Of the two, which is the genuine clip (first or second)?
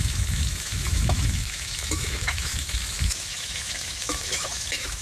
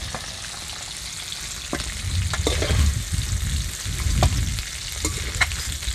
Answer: second